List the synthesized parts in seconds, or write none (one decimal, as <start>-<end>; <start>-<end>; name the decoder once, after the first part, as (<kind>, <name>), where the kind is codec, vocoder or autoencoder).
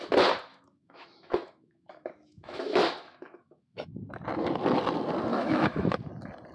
0.5-4.1 (autoencoder, DAC-VAE); 5.3-6.0